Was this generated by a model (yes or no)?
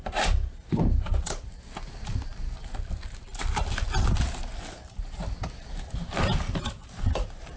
no